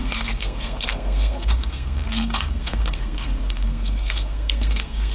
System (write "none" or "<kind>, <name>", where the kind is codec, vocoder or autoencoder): codec, SNAC